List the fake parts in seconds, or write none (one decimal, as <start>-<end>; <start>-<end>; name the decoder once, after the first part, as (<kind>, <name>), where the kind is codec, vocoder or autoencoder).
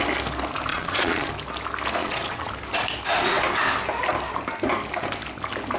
0.7-1.3 (vocoder, Vocos); 2.0-2.5